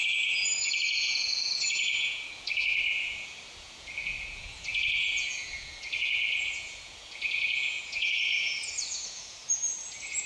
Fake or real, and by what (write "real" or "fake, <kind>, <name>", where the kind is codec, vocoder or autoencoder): fake, vocoder, Vocos